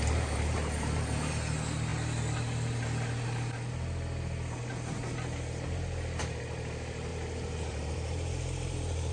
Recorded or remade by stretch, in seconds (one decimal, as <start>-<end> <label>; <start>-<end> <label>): 0.0-7.1 recorded; 7.1-9.1 remade